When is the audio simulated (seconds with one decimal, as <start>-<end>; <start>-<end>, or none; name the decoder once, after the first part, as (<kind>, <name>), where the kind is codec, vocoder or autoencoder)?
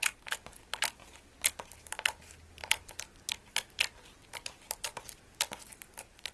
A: none